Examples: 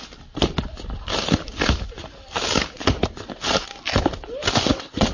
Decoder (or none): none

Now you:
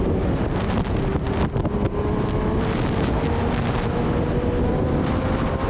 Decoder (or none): none